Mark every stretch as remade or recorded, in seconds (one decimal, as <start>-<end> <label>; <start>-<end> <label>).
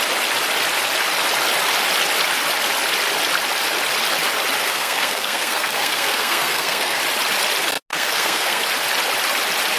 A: 0.0-4.6 recorded; 4.6-7.0 remade; 7.0-7.9 recorded; 7.9-8.6 remade; 8.6-9.8 recorded